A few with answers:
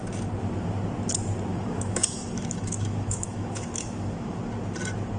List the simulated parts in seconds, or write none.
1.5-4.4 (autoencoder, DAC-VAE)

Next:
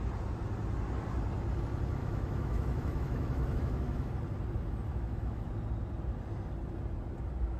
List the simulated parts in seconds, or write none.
2.0-4.1 (autoencoder, DAC-VAE); 4.9-5.5

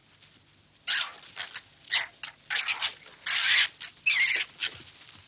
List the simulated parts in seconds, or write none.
none

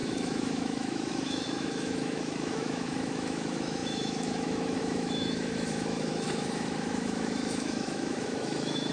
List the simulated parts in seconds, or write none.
0.0-8.9 (autoencoder, DAC-VAE)

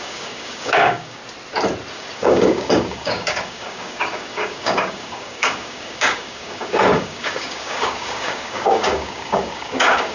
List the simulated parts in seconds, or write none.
0.0-1.2 (codec, DAC); 1.9-10.1

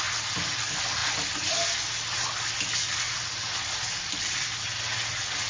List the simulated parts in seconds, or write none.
none